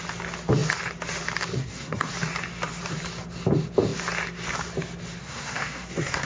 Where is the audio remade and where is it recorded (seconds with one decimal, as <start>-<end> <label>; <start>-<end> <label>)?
0.0-1.6 recorded; 1.6-2.1 remade; 2.1-5.2 recorded; 5.2-6.3 remade